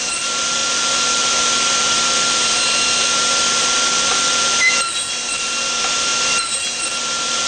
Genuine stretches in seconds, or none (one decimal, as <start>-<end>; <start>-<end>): 6.1-7.0

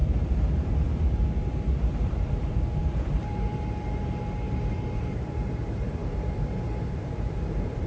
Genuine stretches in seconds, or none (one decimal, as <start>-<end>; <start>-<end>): none